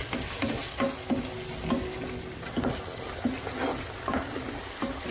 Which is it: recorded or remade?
recorded